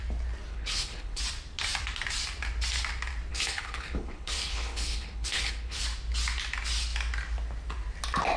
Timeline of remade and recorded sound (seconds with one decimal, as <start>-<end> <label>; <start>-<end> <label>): 0.0-0.5 recorded; 0.5-1.2 remade; 1.2-3.3 recorded; 3.3-5.8 remade; 5.8-8.4 recorded